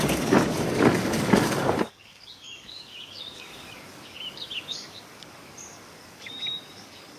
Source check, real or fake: fake